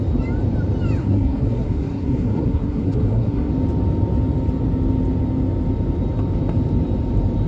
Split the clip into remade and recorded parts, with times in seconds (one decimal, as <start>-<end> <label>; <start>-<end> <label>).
0.0-1.0 recorded; 1.0-3.5 remade; 3.5-7.5 recorded